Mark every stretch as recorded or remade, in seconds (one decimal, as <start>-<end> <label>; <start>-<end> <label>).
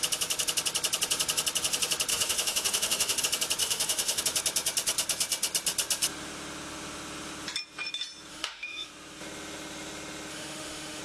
0.0-2.1 recorded; 2.1-3.2 remade; 3.2-3.6 recorded; 3.6-4.2 remade; 4.2-8.3 recorded; 8.3-8.9 remade; 8.9-10.3 recorded; 10.3-11.0 remade